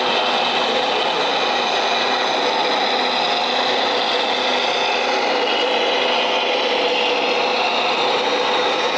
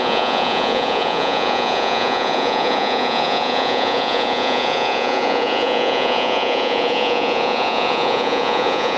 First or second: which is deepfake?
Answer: second